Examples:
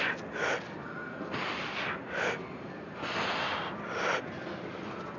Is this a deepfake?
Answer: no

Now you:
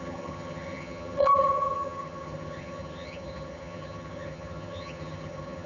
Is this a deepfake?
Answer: yes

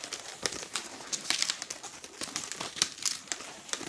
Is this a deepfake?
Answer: yes